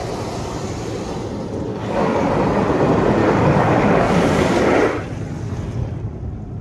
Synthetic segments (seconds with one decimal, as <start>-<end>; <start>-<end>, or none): 1.7-2.3; 3.2-4.6